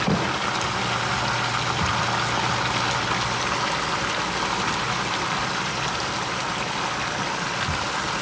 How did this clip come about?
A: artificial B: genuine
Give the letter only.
B